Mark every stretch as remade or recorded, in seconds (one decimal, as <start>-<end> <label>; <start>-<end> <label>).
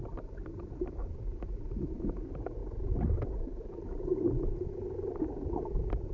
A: 0.0-2.6 recorded; 2.6-4.3 remade; 4.3-6.1 recorded